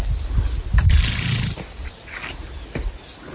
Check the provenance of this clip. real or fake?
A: real